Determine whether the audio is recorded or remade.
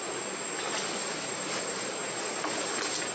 recorded